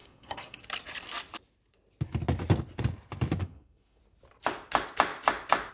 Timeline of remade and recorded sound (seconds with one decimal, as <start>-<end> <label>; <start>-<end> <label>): 0.0-0.6 remade; 0.6-3.4 recorded; 3.4-4.0 remade; 4.0-5.7 recorded